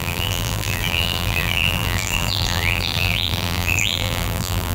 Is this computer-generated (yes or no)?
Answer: yes